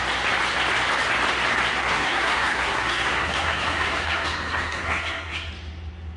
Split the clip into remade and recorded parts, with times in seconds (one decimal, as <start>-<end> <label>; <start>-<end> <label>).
0.0-1.8 recorded; 1.8-5.5 remade; 5.5-6.2 recorded